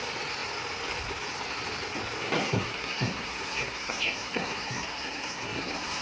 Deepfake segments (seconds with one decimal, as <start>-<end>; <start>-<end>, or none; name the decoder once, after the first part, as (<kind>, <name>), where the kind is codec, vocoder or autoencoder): 2.2-6.0 (codec, SNAC)